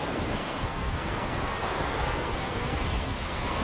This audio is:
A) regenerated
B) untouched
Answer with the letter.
A